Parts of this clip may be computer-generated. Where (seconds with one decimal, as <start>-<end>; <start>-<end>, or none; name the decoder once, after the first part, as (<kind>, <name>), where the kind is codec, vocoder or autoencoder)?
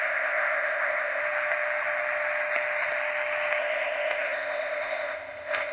0.0-1.2 (codec, ZipCodec); 3.6-5.7